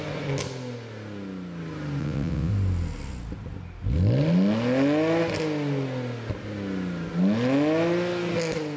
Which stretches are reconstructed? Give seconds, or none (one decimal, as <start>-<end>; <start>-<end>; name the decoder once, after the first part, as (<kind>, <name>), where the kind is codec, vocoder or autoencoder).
2.0-2.5 (vocoder, WaveNeXt)